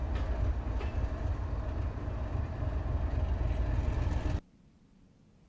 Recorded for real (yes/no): yes